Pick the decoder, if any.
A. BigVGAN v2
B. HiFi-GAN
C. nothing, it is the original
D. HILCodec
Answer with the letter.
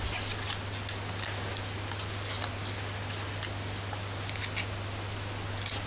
C